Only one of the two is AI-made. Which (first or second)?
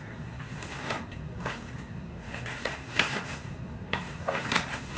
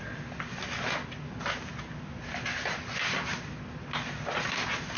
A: first